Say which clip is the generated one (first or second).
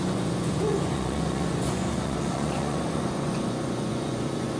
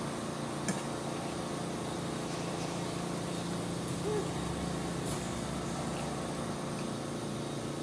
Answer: first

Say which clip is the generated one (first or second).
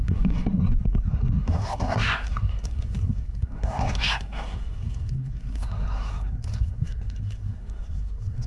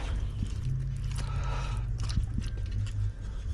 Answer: first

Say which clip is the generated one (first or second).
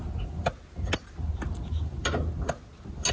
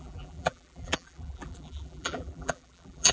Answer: second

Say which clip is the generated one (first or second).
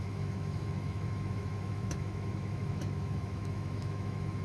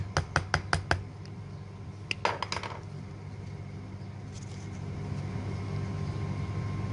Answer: first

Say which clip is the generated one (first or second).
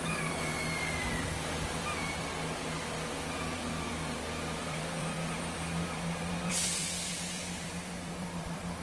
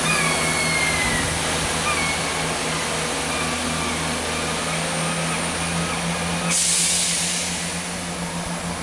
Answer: first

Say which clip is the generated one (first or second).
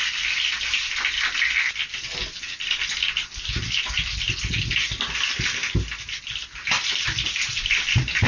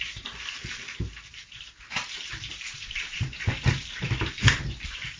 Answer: second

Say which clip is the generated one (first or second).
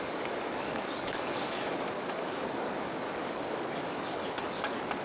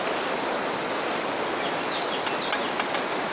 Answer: first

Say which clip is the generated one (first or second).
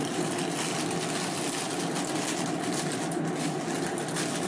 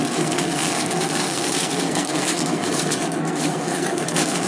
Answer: second